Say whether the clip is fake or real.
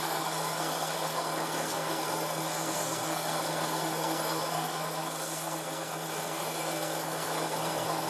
fake